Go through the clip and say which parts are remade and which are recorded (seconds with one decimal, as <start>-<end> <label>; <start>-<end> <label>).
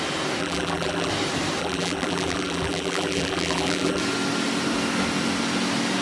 0.0-0.4 recorded; 0.4-1.1 remade; 1.1-1.6 recorded; 1.6-4.0 remade; 4.0-6.0 recorded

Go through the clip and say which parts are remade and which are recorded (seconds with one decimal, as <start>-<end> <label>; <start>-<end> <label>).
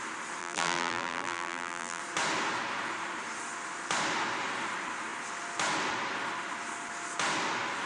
0.0-0.4 recorded; 0.4-2.0 remade; 2.0-7.9 recorded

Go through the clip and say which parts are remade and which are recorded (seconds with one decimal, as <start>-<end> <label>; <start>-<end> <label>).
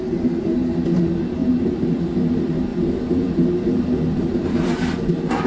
0.0-1.4 recorded; 1.4-2.1 remade; 2.1-2.7 recorded; 2.7-5.1 remade; 5.1-5.5 recorded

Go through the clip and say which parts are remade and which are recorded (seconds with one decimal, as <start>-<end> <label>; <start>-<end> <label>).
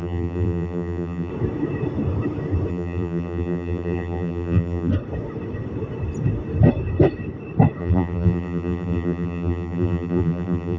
0.0-1.3 remade; 1.3-2.7 recorded; 2.7-4.9 remade; 4.9-7.8 recorded; 7.8-10.8 remade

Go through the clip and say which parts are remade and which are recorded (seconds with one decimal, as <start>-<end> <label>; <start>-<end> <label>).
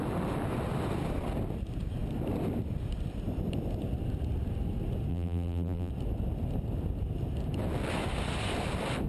0.0-5.1 recorded; 5.1-5.9 remade; 5.9-9.1 recorded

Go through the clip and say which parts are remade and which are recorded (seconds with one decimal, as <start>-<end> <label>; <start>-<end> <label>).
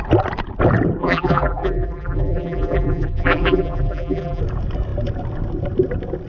0.0-1.0 recorded; 1.0-4.4 remade; 4.4-6.3 recorded